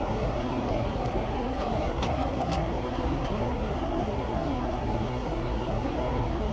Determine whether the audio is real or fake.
fake